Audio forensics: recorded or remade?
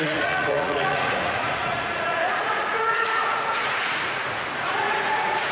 remade